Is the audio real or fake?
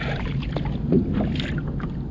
real